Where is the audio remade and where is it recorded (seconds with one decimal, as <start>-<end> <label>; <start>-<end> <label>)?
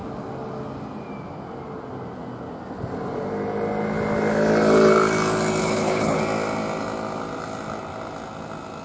0.0-5.6 recorded; 5.6-6.2 remade; 6.2-8.8 recorded